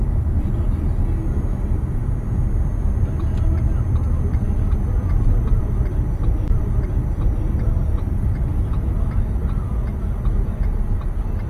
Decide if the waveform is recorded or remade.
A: recorded